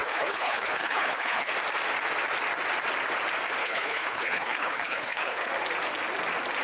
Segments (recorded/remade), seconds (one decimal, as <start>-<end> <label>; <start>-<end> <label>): 0.0-1.5 remade; 1.5-3.6 recorded; 3.6-5.5 remade; 5.5-6.6 recorded